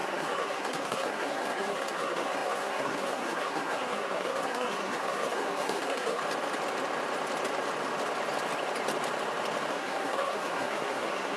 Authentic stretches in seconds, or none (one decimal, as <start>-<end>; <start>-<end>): 6.2-9.7